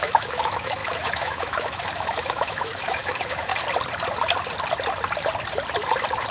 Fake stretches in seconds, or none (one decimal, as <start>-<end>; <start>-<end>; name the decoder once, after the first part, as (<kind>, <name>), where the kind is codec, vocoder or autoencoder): 0.0-3.5 (autoencoder, DAC-VAE)